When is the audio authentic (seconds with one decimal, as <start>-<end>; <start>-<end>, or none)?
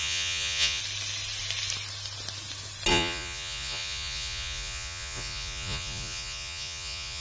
0.8-2.9